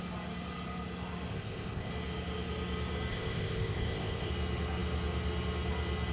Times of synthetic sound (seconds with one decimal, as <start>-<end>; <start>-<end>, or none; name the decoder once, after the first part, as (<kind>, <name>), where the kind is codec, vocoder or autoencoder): 1.3-1.9 (codec, ZipCodec); 3.1-4.3